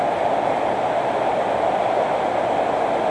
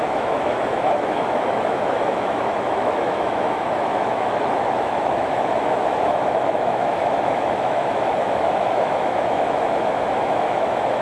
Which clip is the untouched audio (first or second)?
first